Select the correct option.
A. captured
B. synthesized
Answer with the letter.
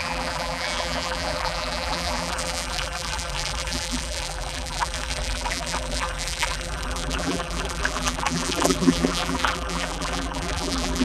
B